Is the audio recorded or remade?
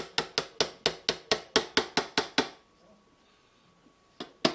recorded